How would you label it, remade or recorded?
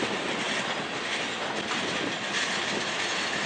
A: recorded